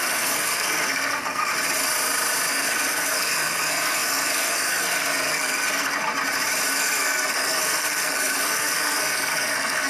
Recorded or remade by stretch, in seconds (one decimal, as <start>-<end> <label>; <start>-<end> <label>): 0.0-1.5 remade; 1.5-2.5 recorded; 2.5-6.1 remade; 6.1-6.7 recorded; 6.7-9.9 remade